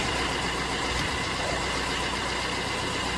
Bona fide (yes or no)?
yes